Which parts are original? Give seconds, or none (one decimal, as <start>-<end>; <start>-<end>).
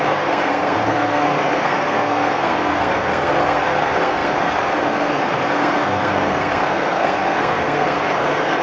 none